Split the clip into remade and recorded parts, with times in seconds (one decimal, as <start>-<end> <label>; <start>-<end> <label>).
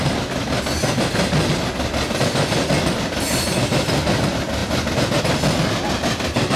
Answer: 0.0-6.6 recorded